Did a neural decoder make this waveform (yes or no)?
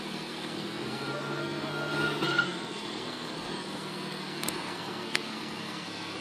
yes